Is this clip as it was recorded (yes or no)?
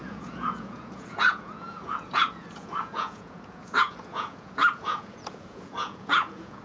no